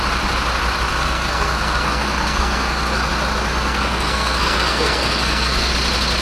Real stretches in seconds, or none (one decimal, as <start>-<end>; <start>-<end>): 0.0-0.9; 3.1-3.5; 5.7-6.2